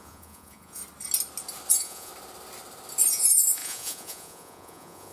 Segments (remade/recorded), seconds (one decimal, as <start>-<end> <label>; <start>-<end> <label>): 0.0-0.8 remade; 0.8-1.7 recorded; 1.7-2.1 remade; 2.1-3.1 recorded; 3.1-5.1 remade

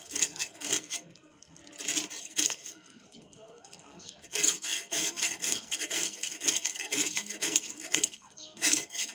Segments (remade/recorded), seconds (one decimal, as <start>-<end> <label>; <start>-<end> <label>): 0.0-1.6 remade; 1.6-2.2 recorded; 2.2-9.1 remade

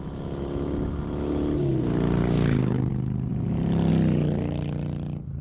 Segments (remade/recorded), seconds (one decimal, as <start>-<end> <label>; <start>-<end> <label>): 0.0-2.2 recorded; 2.2-2.9 remade; 2.9-5.4 recorded

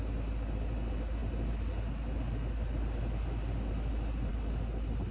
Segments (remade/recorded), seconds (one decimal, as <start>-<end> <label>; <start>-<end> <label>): 0.0-5.1 recorded

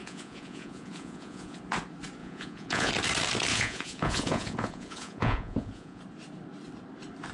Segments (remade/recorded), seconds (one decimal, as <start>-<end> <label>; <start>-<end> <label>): 0.0-1.6 remade; 1.6-2.2 recorded; 2.2-2.9 remade; 2.9-3.5 recorded; 3.5-6.0 remade; 6.0-7.3 recorded

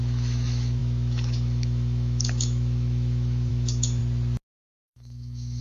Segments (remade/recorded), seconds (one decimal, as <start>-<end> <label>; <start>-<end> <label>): 0.0-4.0 remade; 4.0-4.5 recorded; 4.5-5.6 remade

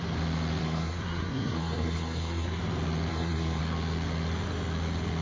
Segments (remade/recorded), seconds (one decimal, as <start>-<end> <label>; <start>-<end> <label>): 0.0-0.6 recorded; 0.6-2.6 remade; 2.6-3.1 recorded; 3.1-3.6 remade; 3.6-5.2 recorded

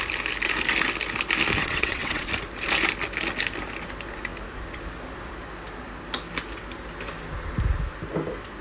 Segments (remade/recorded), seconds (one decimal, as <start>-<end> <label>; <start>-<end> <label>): 0.0-1.6 recorded; 1.6-2.3 remade; 2.3-8.6 recorded